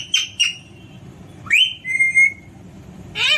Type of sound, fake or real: real